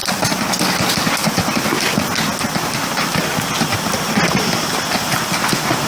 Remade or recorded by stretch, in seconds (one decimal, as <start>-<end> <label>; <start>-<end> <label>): 0.0-5.9 recorded

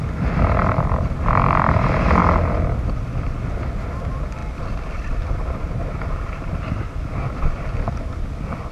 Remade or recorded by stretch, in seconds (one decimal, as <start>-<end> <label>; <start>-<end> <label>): 0.0-4.4 recorded; 4.4-7.1 remade; 7.1-8.7 recorded

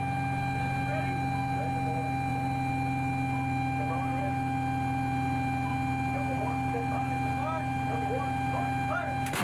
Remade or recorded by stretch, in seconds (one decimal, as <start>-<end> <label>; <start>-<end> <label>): 0.0-9.4 recorded

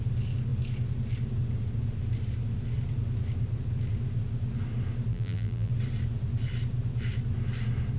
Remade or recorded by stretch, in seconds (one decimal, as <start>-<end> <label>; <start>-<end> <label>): 0.0-5.1 recorded; 5.1-5.7 remade; 5.7-8.0 recorded

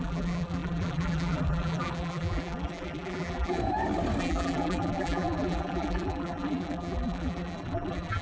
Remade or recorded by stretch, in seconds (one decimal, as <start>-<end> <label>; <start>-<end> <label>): 0.0-3.6 remade; 3.6-4.2 recorded; 4.2-8.2 remade

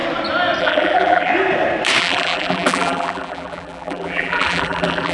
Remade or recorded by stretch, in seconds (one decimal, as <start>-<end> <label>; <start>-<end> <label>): 0.0-0.6 recorded; 0.6-1.3 remade; 1.3-2.0 recorded; 2.0-5.1 remade

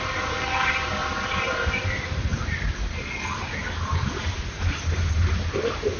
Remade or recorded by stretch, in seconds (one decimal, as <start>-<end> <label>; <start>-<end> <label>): 0.0-2.3 remade; 2.3-4.2 recorded; 4.2-6.0 remade